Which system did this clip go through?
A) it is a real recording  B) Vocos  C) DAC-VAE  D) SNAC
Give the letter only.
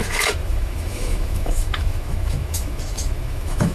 C